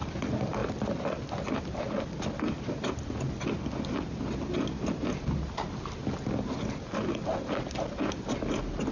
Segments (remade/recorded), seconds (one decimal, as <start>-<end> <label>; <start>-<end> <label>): 0.0-8.9 recorded